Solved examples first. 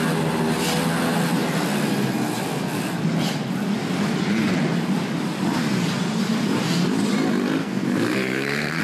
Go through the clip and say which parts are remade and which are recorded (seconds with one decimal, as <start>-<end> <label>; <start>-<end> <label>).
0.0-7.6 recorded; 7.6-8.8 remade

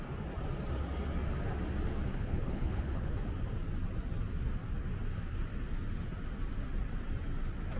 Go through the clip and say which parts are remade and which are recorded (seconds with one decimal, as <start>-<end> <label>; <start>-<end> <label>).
0.0-2.1 recorded; 2.1-3.1 remade; 3.1-7.8 recorded

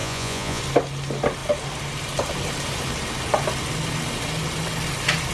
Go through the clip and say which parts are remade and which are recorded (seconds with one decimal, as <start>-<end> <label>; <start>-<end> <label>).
0.0-0.6 remade; 0.6-5.3 recorded

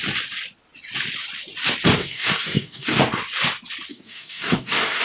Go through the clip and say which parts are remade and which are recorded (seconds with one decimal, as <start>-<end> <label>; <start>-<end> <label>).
0.0-2.0 recorded; 2.0-3.0 remade; 3.0-3.9 recorded; 3.9-5.0 remade

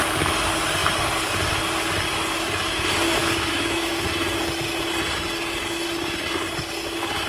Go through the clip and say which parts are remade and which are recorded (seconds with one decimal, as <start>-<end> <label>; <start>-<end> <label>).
0.0-3.2 recorded; 3.2-4.0 remade; 4.0-7.3 recorded

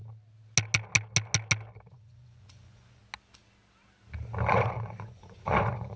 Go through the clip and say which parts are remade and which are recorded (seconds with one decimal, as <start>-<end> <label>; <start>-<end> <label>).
0.0-1.9 recorded; 1.9-3.0 remade; 3.0-4.5 recorded; 4.5-6.0 remade